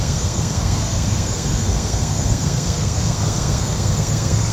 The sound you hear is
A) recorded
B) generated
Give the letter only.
B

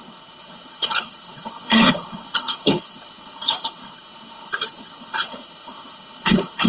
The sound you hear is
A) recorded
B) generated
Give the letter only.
B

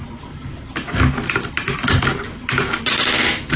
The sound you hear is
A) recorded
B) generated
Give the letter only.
A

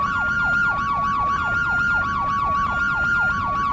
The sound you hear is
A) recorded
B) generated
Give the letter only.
A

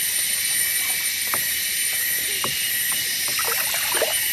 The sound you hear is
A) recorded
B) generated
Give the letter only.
A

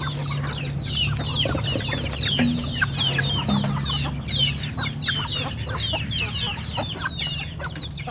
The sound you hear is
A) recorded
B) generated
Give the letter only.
A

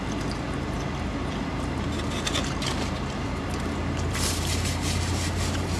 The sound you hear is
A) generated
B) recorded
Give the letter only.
B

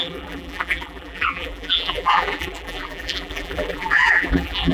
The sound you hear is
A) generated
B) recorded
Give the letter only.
A